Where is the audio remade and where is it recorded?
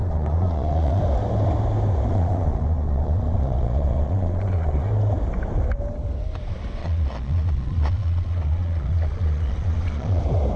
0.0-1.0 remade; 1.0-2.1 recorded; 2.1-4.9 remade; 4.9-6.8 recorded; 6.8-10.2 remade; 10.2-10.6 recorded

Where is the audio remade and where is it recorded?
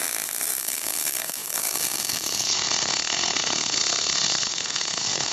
0.0-0.6 recorded; 0.6-5.3 remade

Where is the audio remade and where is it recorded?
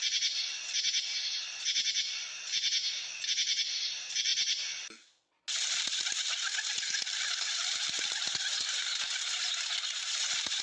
0.0-10.6 recorded